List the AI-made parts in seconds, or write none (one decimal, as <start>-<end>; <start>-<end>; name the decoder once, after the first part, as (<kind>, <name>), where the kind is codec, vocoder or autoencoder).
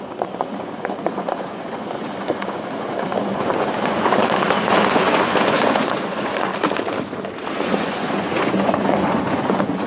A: 0.0-6.5 (vocoder, Vocos); 7.6-9.9